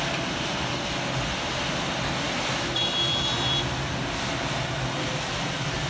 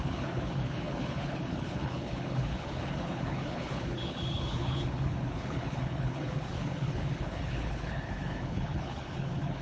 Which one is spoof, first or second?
second